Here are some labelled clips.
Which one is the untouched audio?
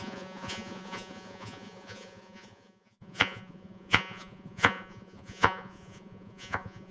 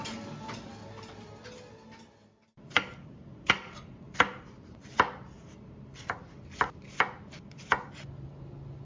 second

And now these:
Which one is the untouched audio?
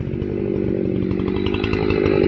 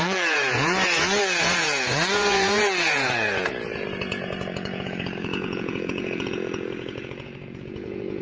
first